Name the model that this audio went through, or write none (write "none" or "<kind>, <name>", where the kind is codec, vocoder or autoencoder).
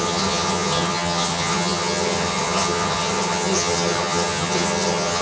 vocoder, HiFi-GAN